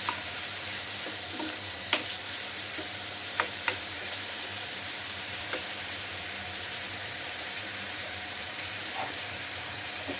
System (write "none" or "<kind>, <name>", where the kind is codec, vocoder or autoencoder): vocoder, BigVGAN v2